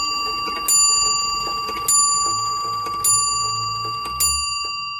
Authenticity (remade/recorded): recorded